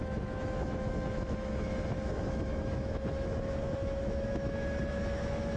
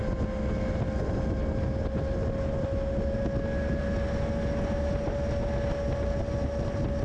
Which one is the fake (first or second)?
first